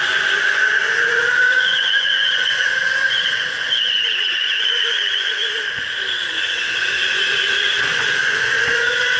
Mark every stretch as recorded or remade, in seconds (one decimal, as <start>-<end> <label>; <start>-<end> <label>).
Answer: 0.0-5.4 remade; 5.4-6.3 recorded; 6.3-9.2 remade